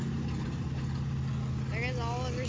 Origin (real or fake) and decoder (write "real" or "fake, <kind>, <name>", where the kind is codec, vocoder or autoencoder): real